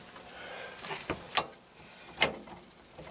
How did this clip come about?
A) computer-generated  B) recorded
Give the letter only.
B